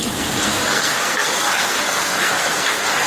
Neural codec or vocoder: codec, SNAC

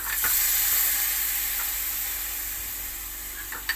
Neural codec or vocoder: none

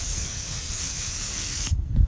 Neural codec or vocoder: codec, SNAC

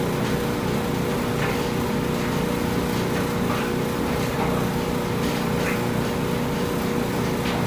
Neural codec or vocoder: none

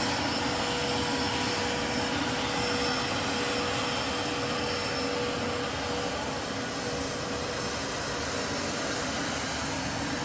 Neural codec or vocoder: none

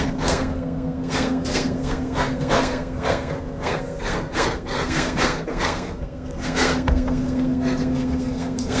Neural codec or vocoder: codec, SNAC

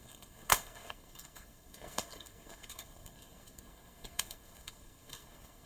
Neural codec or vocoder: codec, SNAC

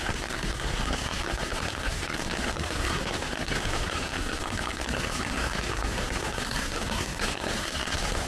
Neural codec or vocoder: codec, SNAC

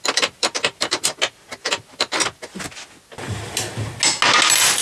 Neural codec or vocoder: none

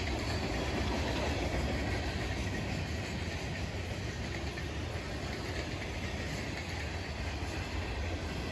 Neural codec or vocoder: none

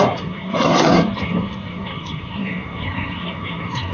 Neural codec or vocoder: codec, SNAC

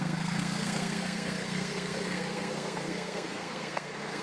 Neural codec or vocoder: codec, SNAC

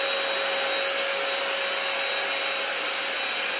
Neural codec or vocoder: none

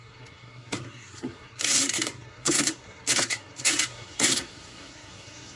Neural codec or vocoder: codec, SNAC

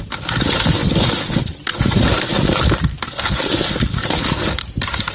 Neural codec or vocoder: none